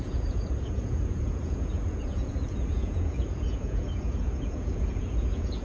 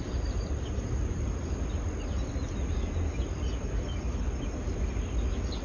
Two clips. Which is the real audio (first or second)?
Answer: second